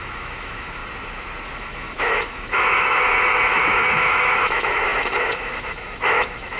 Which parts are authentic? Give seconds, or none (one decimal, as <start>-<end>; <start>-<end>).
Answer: 0.8-1.6